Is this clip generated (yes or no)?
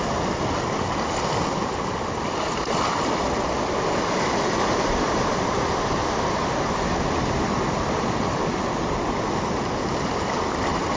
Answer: no